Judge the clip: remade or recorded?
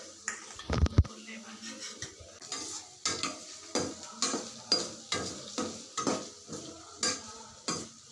recorded